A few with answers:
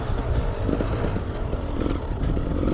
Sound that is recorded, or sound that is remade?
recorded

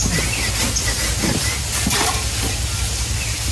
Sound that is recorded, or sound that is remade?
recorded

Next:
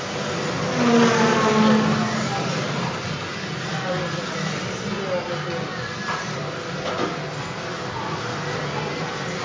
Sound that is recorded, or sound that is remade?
recorded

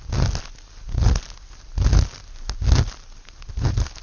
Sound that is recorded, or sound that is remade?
recorded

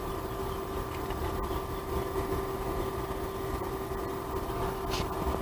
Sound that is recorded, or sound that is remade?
recorded